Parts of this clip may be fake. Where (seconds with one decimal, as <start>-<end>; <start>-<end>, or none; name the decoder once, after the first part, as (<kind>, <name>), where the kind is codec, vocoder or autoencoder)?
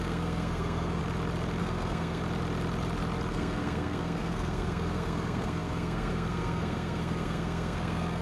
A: 0.0-1.0 (codec, SNAC); 1.6-2.2; 3.3-8.2